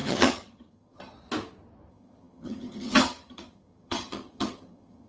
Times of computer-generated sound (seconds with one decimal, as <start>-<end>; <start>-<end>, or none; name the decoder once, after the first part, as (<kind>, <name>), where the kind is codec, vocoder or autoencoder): 0.0-1.1 (vocoder, HiFi-GAN); 1.9-5.1